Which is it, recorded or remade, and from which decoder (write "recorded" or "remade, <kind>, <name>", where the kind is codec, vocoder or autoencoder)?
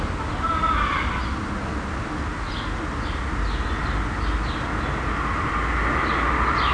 recorded